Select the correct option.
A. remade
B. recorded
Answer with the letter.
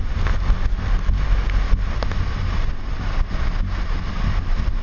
B